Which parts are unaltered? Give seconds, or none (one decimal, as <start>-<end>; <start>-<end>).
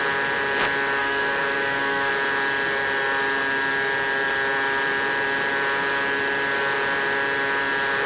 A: 0.0-1.0; 2.1-8.1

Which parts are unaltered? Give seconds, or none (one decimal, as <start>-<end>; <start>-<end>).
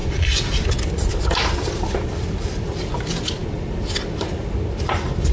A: 0.0-5.3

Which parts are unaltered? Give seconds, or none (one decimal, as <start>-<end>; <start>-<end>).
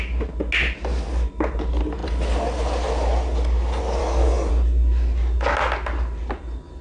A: 0.0-4.0; 4.5-6.8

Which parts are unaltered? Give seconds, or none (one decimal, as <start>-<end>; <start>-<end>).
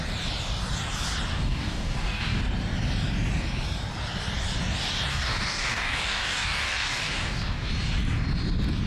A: 0.0-1.3; 2.4-5.1; 7.7-8.9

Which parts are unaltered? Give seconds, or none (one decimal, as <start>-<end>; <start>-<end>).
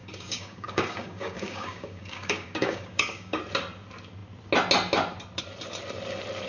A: 3.4-6.5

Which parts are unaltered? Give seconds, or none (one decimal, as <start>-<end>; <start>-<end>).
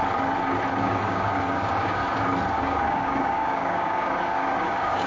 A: 0.0-0.8; 2.0-2.6